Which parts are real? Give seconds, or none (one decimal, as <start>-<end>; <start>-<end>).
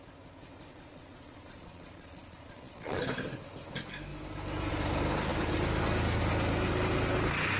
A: 0.0-0.7; 3.0-7.6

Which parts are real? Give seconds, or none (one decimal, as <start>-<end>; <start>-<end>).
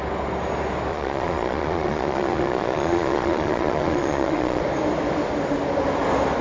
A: 0.0-0.9; 4.6-6.4